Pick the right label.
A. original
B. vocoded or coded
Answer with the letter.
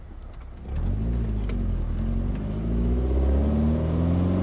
A